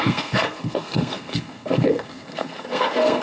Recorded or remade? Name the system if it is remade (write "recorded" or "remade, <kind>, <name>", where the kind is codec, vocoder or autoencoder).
remade, codec, SNAC